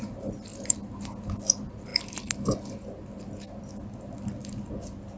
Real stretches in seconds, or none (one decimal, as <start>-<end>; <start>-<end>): 0.0-5.2